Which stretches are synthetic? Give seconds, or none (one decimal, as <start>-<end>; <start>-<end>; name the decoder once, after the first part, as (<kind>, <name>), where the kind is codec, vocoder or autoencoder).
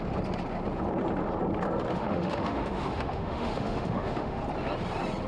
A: 1.9-4.4 (autoencoder, DAC-VAE)